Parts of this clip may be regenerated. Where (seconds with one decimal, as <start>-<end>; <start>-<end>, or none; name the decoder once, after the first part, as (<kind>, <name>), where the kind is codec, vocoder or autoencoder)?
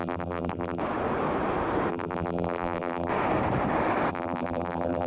0.0-0.8 (vocoder, BigVGAN v2); 1.9-3.1; 4.1-5.1